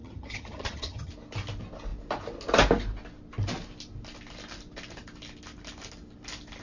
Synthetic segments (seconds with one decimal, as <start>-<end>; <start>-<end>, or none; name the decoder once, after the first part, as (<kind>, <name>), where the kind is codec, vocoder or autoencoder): 0.0-1.1 (vocoder, HiFi-GAN)